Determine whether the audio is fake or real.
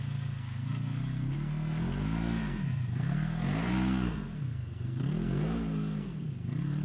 fake